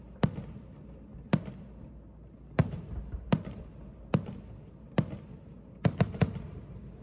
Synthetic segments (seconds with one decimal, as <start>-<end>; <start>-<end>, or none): none